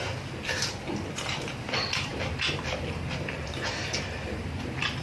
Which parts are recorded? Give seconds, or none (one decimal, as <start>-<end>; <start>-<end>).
0.0-5.0